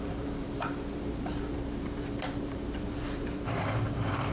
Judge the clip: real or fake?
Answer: fake